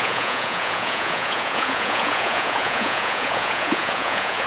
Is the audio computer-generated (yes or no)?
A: yes